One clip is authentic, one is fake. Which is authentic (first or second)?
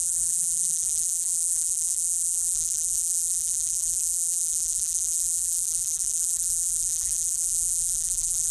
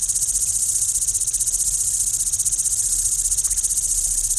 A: second